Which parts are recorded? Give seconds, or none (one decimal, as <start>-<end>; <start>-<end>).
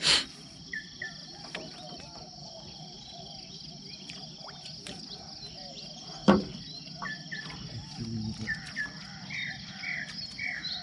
0.0-10.8